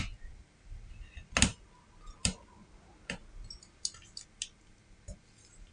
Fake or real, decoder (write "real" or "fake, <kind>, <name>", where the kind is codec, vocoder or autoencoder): real